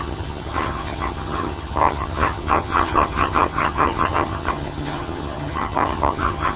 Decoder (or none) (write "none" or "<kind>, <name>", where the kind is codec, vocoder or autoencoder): vocoder, HiFi-GAN